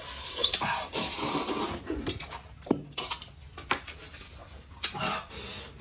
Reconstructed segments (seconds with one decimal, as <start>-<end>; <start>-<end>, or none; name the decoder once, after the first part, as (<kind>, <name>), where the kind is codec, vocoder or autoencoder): 0.4-3.1 (vocoder, BigVGAN v2); 4.4-5.0